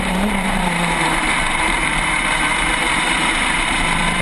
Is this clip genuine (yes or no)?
no